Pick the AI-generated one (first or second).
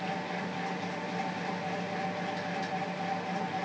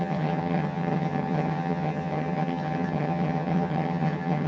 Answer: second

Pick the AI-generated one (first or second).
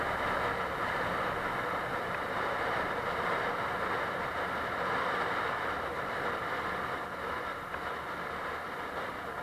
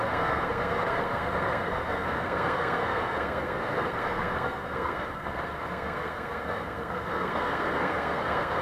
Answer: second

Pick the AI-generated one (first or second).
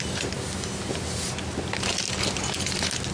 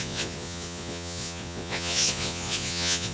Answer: second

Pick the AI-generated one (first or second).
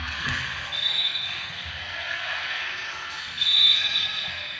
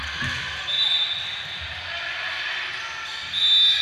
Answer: first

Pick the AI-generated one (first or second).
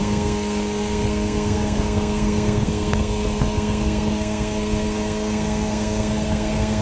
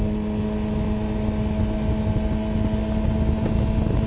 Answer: first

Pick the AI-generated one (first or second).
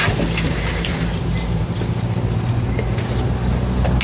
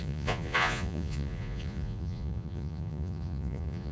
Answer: second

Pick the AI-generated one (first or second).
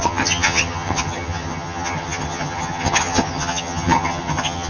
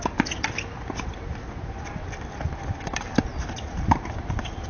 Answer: first